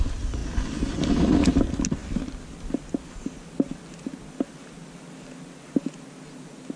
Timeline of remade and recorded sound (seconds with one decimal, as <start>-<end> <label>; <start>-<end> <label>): 0.0-6.8 recorded

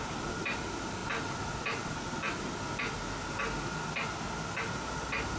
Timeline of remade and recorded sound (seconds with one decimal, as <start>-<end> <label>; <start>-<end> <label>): 0.0-5.4 recorded

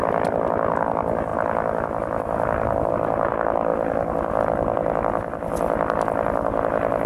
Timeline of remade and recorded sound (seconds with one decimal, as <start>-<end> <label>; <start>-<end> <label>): 0.0-7.1 recorded

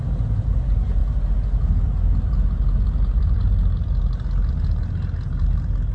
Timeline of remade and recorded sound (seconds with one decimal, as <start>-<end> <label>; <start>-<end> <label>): 0.0-5.9 recorded

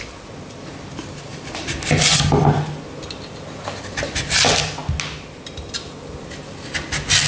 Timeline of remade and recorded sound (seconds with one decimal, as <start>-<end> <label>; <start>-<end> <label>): 0.0-7.3 recorded